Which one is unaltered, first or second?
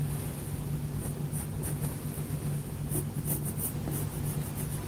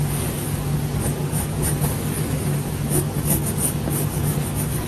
first